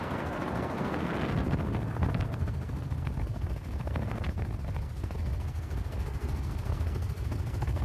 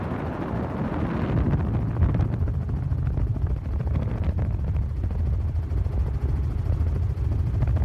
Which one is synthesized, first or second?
first